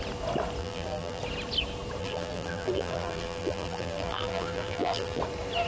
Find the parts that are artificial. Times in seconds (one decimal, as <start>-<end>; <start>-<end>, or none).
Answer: 0.6-1.2; 2.0-5.2